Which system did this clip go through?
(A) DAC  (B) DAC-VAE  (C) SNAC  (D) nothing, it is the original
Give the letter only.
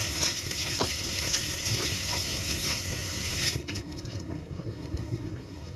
C